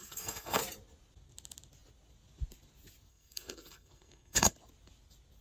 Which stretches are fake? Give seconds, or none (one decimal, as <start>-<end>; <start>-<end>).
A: 0.0-0.6; 3.1-4.5